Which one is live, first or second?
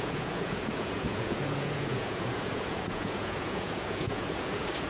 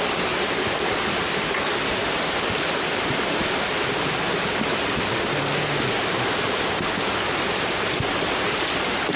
second